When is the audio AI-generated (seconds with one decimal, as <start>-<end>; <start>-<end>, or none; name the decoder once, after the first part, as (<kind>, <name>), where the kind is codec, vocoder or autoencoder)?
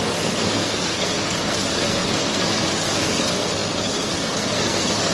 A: 0.0-5.1 (codec, SNAC)